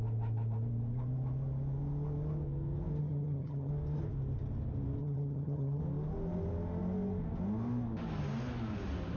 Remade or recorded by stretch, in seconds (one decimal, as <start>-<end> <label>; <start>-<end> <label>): 0.0-3.0 recorded; 3.0-3.7 remade; 3.7-5.0 recorded; 5.0-5.8 remade; 5.8-9.2 recorded